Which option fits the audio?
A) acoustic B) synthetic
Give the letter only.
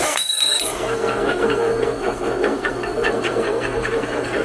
B